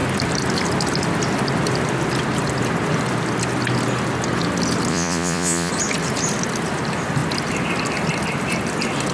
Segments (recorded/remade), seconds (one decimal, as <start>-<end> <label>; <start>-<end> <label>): 0.0-4.9 recorded; 4.9-5.7 remade; 5.7-9.1 recorded